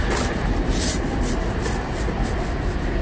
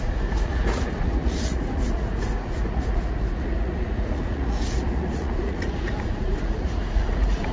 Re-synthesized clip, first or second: second